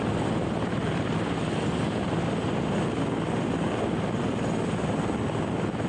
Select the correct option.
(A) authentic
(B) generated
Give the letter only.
A